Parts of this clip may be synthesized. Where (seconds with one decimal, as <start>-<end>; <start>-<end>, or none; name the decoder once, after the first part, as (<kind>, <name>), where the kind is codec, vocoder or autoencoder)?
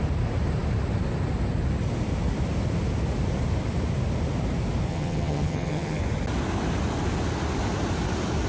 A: 4.9-6.0 (vocoder, HiFi-GAN)